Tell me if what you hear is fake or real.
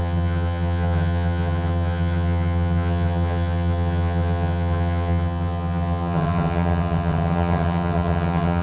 fake